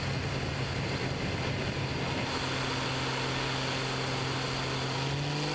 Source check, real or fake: real